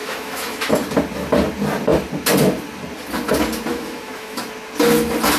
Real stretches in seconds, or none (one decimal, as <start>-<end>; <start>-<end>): 0.7-3.7; 4.4-5.4